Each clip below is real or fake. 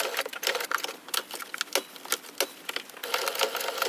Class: real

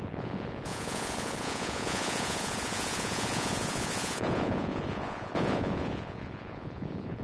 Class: fake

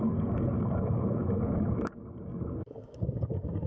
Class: fake